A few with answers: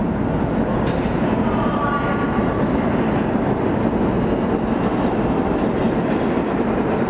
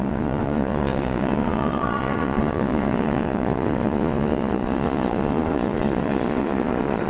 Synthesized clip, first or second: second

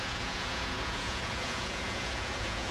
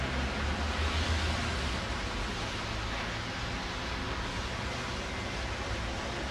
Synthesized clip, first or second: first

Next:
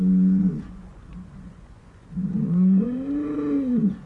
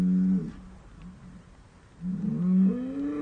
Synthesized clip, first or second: first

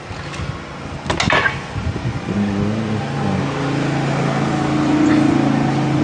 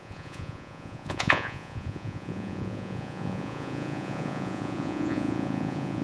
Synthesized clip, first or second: second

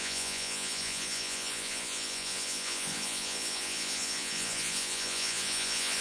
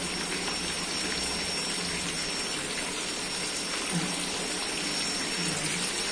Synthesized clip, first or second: first